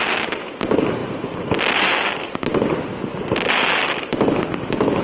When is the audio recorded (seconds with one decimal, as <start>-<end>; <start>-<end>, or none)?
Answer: 0.0-5.0